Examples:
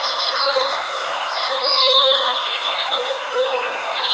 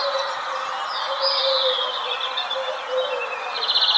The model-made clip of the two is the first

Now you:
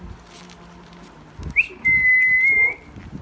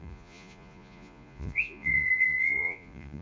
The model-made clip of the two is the second